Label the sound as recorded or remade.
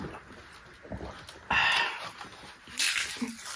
recorded